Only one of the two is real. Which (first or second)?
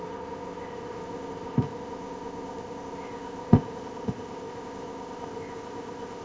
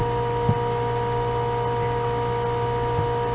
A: second